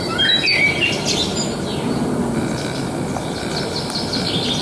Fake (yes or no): no